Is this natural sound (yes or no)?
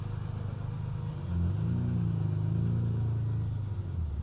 yes